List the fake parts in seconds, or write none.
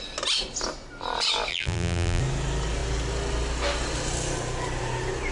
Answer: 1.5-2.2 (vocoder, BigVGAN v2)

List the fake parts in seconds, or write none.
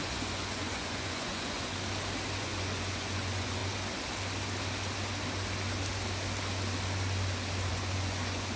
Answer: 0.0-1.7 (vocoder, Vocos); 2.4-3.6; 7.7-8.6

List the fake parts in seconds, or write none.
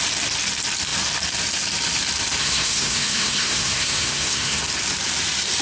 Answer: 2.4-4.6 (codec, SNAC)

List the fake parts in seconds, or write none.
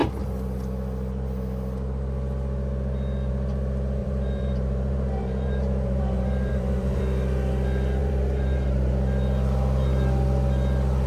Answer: 4.0-7.0 (vocoder, BigVGAN v2); 8.0-8.9